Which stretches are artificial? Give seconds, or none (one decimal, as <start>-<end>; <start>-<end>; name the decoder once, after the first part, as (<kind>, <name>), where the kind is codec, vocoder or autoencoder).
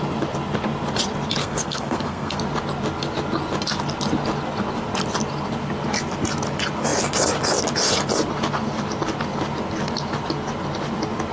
1.4-2.4 (codec, SNAC)